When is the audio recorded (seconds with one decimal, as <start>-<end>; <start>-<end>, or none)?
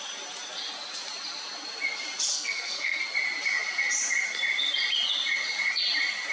0.0-2.3; 3.0-6.3